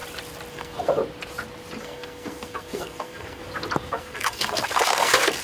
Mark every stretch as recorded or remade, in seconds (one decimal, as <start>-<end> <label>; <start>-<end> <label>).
0.0-0.5 recorded; 0.5-1.0 remade; 1.0-1.8 recorded; 1.8-3.4 remade; 3.4-3.9 recorded; 3.9-5.4 remade